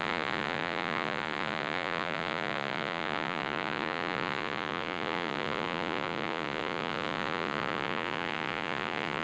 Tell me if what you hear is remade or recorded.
remade